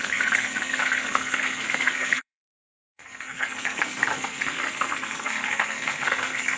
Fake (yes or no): yes